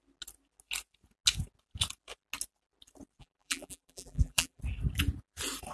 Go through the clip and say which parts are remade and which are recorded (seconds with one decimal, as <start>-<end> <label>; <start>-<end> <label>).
0.0-3.2 recorded; 3.2-4.6 remade; 4.6-5.7 recorded